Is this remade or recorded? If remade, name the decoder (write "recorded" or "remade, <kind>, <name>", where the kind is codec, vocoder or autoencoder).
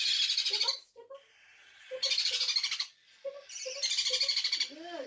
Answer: recorded